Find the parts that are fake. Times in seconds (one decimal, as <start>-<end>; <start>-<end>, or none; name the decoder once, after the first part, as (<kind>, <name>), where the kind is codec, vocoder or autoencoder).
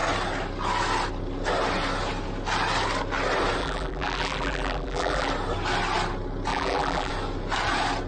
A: 3.6-5.3 (vocoder, BigVGAN v2); 6.5-7.1